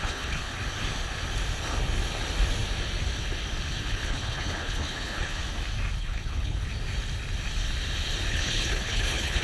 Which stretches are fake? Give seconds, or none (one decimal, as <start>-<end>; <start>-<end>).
0.0-0.5; 3.9-5.4; 6.0-6.7; 8.3-9.4